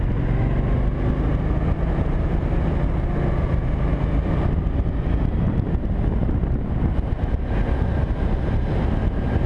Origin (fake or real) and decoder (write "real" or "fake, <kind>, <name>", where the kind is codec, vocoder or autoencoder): real